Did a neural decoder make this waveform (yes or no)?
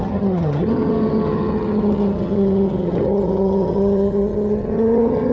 yes